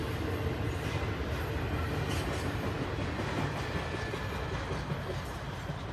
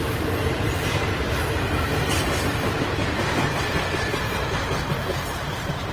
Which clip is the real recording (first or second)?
first